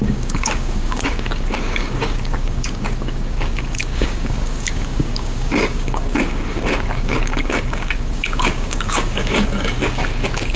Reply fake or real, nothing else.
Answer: fake